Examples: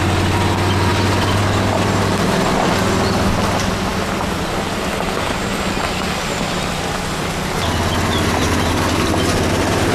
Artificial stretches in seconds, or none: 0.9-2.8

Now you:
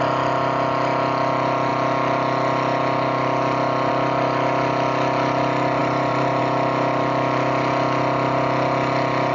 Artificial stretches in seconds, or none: 5.8-6.4

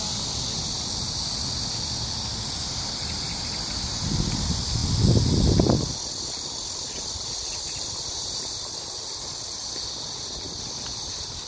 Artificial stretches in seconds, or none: none

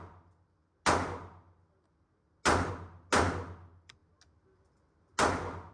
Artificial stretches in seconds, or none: none